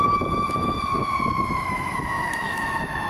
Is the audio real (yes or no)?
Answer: no